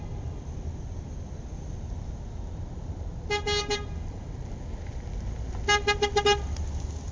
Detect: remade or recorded recorded